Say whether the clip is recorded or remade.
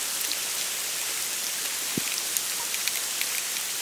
recorded